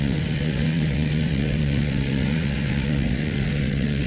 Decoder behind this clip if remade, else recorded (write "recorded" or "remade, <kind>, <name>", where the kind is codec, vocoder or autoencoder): remade, vocoder, WaveNeXt